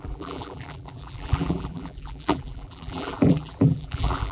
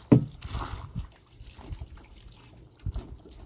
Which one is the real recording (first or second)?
second